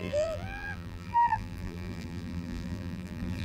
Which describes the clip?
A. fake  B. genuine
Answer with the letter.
A